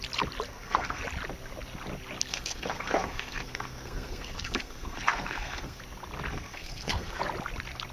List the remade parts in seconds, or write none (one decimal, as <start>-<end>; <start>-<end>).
0.5-1.0; 2.3-5.8; 6.3-7.2